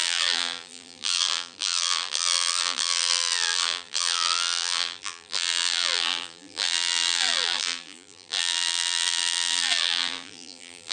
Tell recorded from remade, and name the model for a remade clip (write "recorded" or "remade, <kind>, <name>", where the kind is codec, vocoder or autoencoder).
remade, vocoder, BigVGAN v2